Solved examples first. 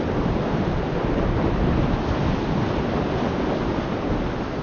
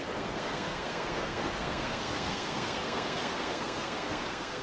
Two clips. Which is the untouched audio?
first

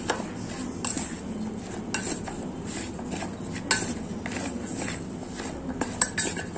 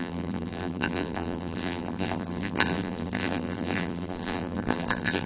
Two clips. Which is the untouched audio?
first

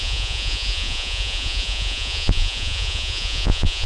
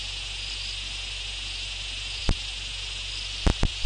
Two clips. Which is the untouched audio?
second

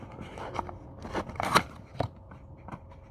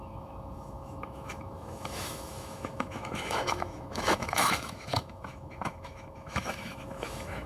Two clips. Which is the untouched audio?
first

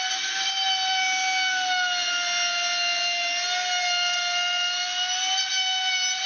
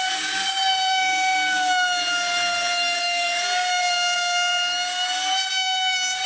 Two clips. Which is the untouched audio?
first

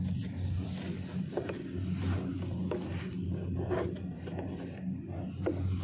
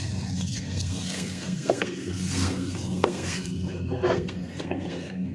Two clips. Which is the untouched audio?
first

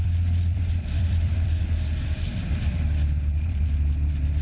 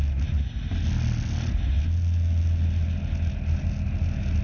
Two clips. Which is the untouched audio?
second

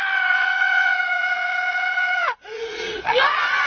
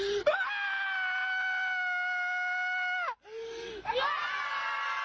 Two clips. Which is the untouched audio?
second